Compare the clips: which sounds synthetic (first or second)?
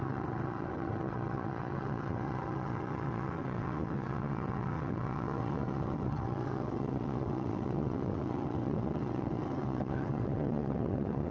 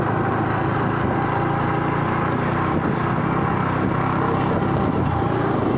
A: first